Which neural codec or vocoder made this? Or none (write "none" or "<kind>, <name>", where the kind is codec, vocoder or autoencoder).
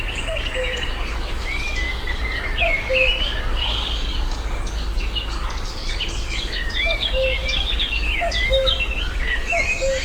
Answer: codec, DAC